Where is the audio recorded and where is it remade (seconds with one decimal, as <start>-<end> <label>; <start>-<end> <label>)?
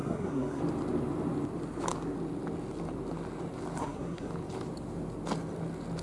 0.0-0.6 remade; 0.6-3.8 recorded; 3.8-4.3 remade; 4.3-6.0 recorded